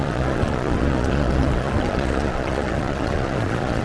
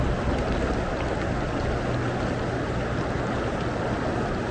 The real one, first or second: second